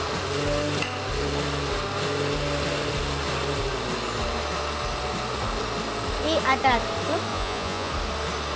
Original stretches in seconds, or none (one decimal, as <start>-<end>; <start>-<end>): 0.0-7.3; 7.9-8.6